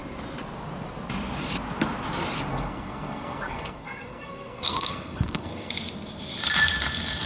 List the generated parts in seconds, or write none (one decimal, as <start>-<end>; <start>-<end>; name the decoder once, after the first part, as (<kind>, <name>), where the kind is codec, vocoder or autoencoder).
2.5-5.7 (codec, SNAC)

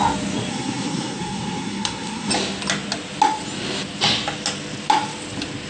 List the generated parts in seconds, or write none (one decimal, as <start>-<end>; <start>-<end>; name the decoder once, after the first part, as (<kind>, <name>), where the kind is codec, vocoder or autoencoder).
0.5-2.3 (codec, SNAC)